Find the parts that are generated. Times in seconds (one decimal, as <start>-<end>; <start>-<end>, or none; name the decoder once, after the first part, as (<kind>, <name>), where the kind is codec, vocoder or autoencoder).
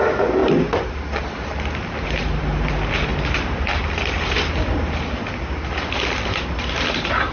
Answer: 0.0-3.1 (vocoder, BigVGAN v2); 6.4-7.3